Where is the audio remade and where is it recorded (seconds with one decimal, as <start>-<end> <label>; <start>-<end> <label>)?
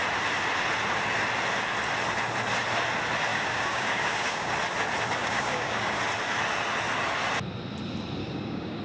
0.0-3.3 recorded; 3.3-4.5 remade; 4.5-5.2 recorded; 5.2-6.0 remade; 6.0-8.2 recorded; 8.2-8.8 remade